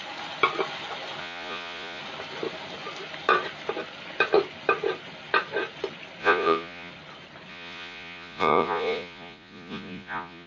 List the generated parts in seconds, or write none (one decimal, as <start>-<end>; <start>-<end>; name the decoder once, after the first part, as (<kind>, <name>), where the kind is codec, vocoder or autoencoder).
1.2-2.0 (vocoder, Vocos); 6.2-6.9; 7.5-10.5